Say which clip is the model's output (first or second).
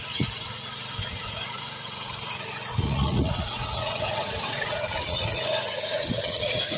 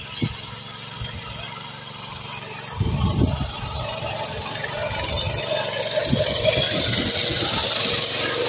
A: first